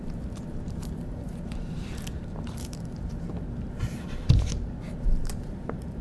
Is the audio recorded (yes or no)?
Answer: no